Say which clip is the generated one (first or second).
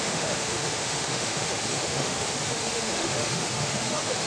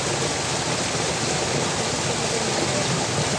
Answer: first